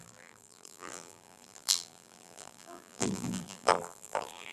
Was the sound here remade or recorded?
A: remade